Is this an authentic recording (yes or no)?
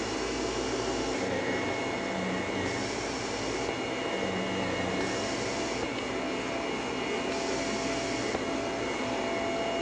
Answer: yes